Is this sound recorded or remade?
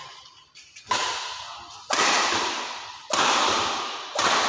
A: recorded